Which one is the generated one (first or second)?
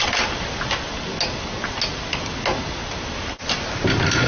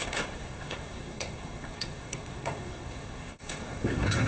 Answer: second